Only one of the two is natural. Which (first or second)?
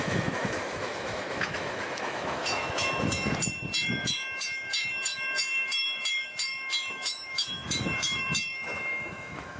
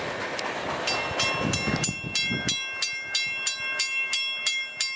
second